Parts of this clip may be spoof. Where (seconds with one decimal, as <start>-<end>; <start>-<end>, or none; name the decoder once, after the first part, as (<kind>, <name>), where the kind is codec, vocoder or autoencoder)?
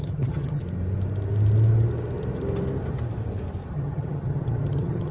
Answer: 0.0-0.6 (vocoder, HiFi-GAN); 3.7-5.1